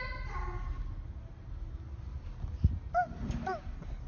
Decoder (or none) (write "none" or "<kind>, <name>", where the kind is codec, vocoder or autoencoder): none